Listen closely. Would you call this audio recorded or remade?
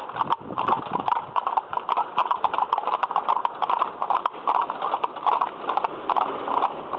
recorded